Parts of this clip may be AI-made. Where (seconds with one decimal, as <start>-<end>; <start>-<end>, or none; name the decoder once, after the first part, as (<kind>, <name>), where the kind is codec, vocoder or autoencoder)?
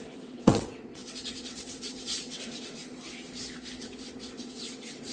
0.0-2.8 (vocoder, WaveNeXt); 3.8-5.1